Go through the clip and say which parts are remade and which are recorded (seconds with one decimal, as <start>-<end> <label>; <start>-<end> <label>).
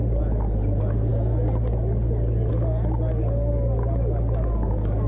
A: 0.0-5.1 recorded